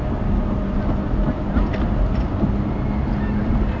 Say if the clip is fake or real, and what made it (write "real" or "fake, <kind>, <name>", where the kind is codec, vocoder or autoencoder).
real